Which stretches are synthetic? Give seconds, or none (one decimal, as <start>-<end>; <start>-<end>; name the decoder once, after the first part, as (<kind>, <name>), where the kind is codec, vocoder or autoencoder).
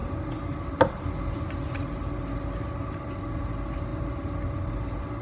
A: none